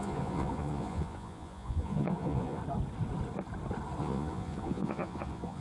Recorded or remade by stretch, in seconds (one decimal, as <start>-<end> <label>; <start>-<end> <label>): 0.0-2.6 remade; 2.6-4.0 recorded; 4.0-5.6 remade